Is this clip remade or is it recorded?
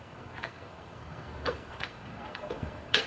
remade